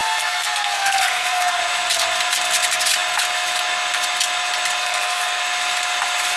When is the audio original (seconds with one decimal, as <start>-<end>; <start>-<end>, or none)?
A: 1.6-4.8; 5.4-6.4